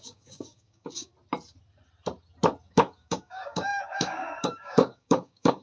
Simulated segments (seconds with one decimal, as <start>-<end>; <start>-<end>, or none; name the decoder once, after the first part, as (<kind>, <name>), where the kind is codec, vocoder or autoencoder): 0.0-1.1 (codec, DAC); 2.7-5.6